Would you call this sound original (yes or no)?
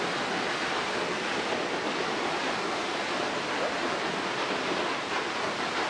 yes